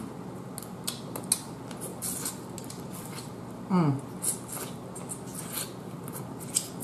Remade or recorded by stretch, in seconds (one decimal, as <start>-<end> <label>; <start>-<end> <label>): 0.0-6.8 recorded